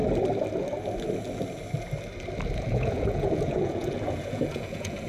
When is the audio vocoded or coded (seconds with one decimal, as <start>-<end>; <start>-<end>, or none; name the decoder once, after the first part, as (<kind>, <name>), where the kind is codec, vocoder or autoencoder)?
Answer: 2.6-5.1 (vocoder, Vocos)

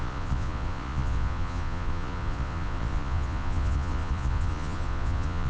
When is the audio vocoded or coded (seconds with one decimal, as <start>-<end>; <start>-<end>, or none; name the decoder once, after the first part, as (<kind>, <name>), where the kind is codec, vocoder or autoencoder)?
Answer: 0.0-5.5 (vocoder, Vocos)

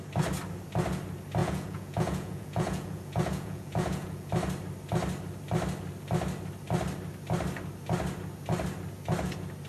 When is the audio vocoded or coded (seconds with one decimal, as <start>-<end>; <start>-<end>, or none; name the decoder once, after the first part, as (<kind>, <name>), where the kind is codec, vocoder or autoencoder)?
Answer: 1.4-4.3 (vocoder, Vocos)

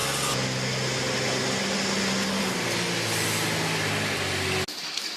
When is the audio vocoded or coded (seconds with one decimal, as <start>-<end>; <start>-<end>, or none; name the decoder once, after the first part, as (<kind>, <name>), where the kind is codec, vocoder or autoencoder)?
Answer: none

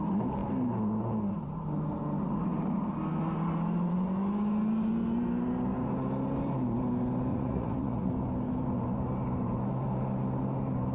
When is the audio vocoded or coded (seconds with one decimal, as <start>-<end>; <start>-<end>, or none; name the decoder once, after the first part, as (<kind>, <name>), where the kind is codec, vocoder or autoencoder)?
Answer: 7.3-8.1 (vocoder, Vocos)